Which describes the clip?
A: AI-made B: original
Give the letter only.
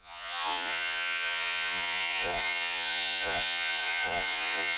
A